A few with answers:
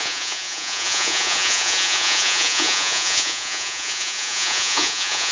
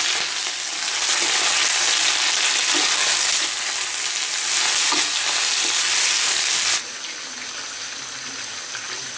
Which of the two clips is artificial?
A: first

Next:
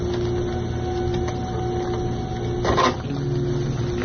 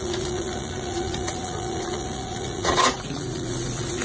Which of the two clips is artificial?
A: second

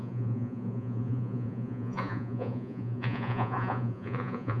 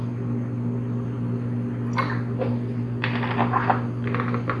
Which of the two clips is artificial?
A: first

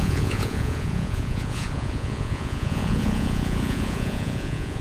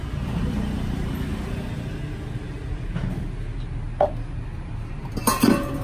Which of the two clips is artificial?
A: first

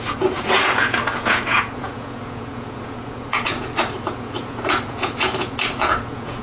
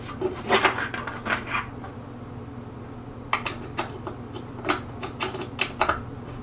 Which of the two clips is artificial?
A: first